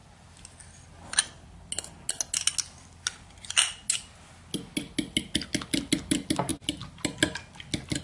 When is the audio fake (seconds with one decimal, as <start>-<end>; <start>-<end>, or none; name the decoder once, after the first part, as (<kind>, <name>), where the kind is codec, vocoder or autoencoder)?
none